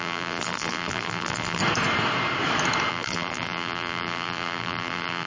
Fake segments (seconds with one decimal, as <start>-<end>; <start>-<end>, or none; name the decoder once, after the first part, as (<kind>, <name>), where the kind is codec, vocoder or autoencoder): 0.0-1.6 (vocoder, BigVGAN v2); 2.9-5.3